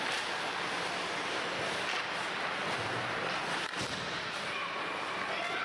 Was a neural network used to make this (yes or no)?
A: no